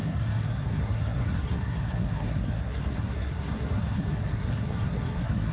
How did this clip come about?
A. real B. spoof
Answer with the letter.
B